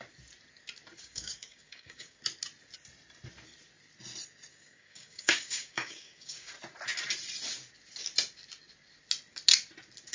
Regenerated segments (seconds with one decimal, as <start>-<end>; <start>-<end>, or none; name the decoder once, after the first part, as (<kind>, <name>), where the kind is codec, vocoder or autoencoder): 1.0-2.2 (codec, DAC); 4.5-6.5